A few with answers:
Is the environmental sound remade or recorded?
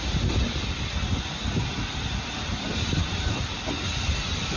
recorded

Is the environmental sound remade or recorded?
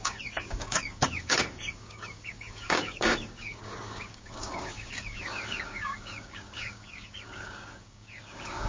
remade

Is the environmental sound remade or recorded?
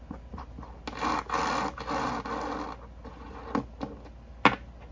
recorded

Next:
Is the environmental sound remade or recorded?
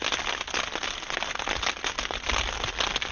recorded